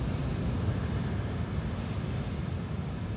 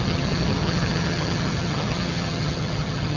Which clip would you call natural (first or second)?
first